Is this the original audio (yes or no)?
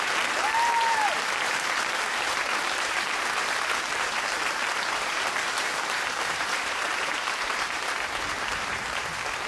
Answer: no